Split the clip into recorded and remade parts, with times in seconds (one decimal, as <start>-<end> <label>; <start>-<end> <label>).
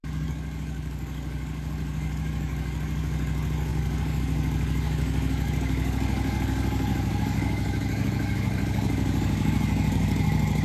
0.0-10.6 remade